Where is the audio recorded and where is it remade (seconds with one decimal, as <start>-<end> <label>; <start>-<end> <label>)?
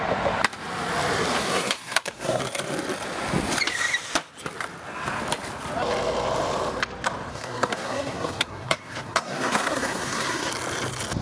0.0-1.4 recorded; 1.4-2.4 remade; 2.4-7.3 recorded; 7.3-10.5 remade; 10.5-11.2 recorded